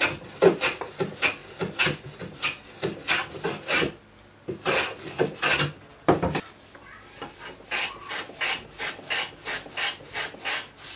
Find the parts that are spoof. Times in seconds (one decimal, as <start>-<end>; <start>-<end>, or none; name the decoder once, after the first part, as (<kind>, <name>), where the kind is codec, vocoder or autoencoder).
none